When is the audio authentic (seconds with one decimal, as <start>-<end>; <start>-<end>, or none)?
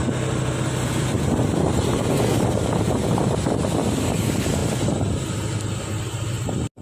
0.0-6.8